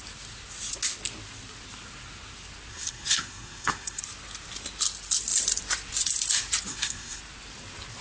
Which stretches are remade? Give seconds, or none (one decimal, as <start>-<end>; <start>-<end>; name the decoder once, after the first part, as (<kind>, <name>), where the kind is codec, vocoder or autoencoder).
2.7-4.0 (codec, SNAC); 6.7-7.2